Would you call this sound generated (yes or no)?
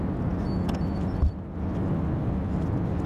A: no